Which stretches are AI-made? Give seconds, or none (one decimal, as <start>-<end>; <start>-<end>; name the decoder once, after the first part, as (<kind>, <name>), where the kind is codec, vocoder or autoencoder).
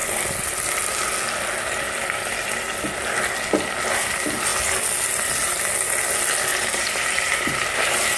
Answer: 6.5-8.2 (vocoder, BigVGAN v2)